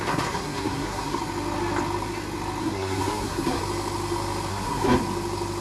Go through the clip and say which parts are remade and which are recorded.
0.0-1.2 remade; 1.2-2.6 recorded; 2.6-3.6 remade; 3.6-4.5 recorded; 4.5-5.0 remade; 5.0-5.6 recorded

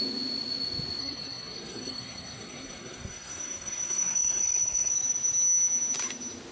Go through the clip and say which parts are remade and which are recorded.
0.0-1.0 recorded; 1.0-4.9 remade; 4.9-6.5 recorded

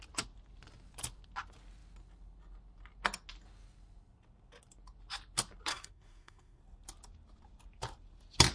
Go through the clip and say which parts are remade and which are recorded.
0.0-5.7 recorded; 5.7-6.6 remade; 6.6-8.5 recorded